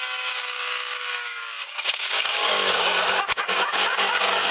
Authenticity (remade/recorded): remade